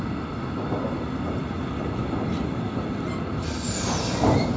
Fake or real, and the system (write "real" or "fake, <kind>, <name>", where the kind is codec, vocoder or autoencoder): real